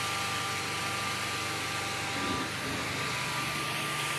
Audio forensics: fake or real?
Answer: real